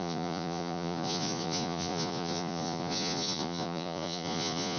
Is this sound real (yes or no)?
no